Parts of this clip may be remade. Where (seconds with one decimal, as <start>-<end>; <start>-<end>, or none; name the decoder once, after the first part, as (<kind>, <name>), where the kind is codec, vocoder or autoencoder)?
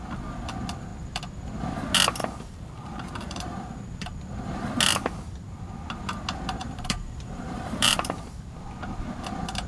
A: 2.2-4.2 (vocoder, BigVGAN v2); 6.6-8.2